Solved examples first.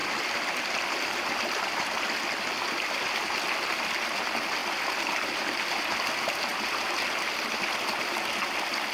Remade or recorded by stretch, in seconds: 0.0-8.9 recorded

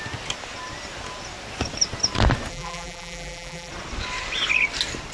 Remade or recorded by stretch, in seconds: 0.0-2.5 recorded; 2.5-3.7 remade; 3.7-5.1 recorded